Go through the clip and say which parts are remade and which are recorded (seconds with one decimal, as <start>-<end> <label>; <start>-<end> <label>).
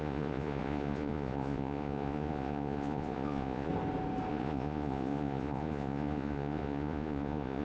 0.0-3.7 remade; 3.7-4.3 recorded; 4.3-7.6 remade